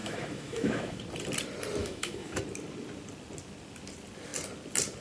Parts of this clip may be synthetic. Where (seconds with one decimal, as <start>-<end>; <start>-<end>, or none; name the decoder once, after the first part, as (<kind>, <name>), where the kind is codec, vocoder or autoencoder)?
0.0-1.0 (autoencoder, DAC-VAE); 1.8-2.4

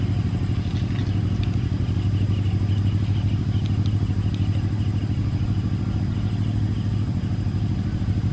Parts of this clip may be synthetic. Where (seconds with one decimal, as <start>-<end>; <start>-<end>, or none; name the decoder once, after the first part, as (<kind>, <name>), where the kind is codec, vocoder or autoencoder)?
none

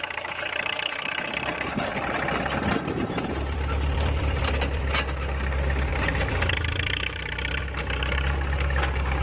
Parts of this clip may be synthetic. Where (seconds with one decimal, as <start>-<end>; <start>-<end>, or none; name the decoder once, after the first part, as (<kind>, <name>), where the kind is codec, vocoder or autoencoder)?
1.9-4.8 (vocoder, BigVGAN v2); 5.9-7.6

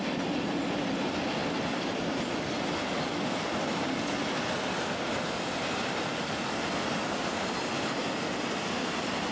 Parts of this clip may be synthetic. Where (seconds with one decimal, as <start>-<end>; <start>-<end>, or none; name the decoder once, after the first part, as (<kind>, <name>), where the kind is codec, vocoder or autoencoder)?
none